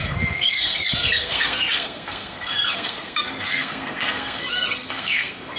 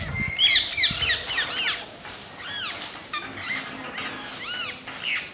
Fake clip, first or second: first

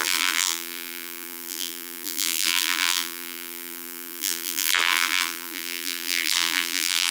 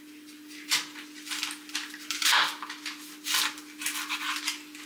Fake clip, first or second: first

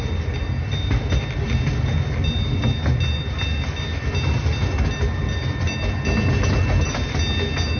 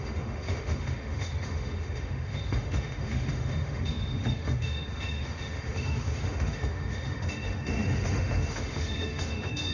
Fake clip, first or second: second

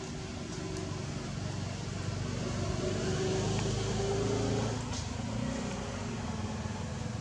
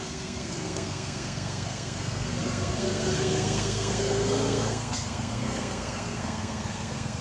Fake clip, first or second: second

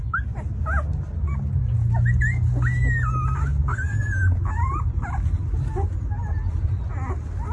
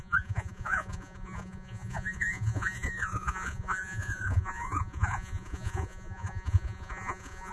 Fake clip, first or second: second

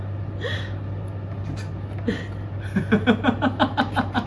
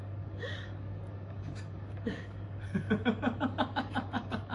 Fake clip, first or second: second